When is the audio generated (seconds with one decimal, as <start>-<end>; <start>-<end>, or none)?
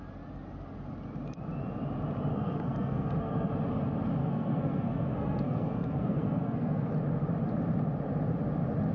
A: 2.3-3.5; 4.2-6.9